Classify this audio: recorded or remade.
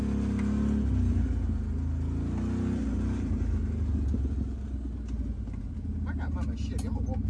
recorded